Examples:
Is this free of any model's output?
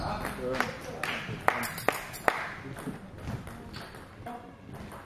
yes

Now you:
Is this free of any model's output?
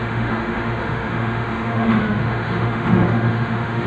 no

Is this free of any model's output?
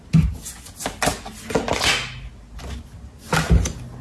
yes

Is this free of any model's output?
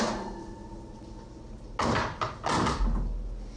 yes